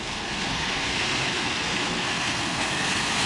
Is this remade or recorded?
remade